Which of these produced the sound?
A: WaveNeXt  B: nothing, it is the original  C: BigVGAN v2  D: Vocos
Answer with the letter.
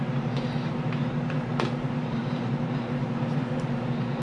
C